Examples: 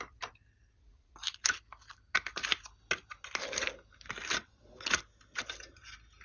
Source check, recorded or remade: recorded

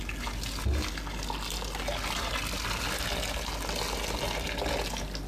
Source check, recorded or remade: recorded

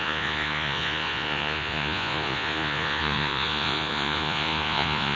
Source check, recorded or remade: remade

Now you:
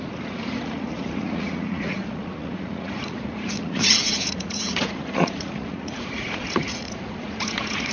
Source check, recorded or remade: remade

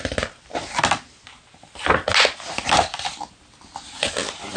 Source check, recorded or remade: recorded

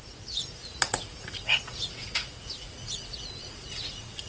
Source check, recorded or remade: remade